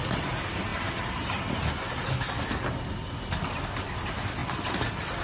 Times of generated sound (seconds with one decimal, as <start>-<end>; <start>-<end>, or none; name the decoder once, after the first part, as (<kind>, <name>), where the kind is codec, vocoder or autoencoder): 4.4-5.2 (vocoder, BigVGAN v2)